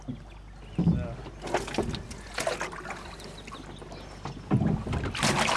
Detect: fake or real real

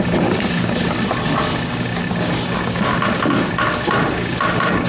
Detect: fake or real real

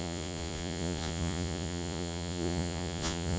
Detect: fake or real fake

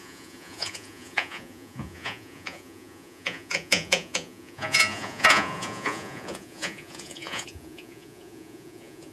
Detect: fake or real fake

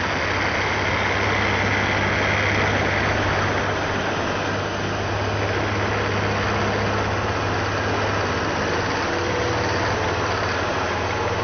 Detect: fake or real real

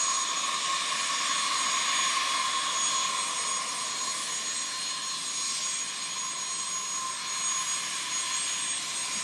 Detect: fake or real real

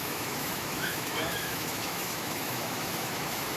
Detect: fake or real fake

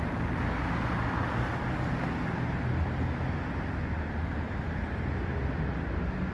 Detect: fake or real real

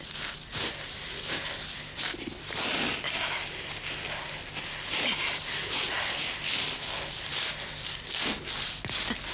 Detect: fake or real real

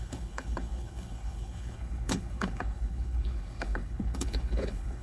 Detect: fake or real fake